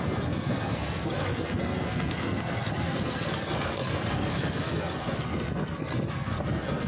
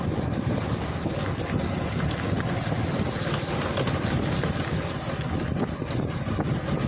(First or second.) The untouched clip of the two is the second